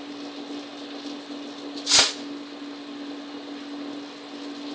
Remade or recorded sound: recorded